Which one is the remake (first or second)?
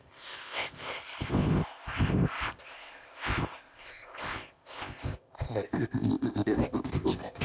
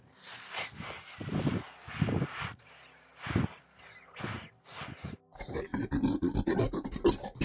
first